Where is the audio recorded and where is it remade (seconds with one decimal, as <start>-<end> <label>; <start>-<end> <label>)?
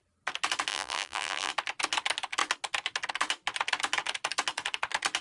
0.0-0.7 recorded; 0.7-1.5 remade; 1.5-5.2 recorded